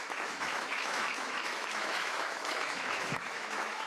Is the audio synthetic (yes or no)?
yes